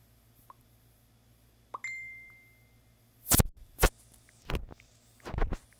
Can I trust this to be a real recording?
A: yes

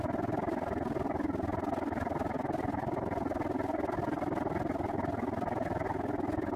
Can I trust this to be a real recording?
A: yes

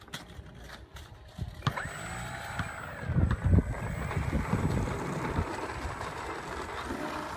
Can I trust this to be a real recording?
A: yes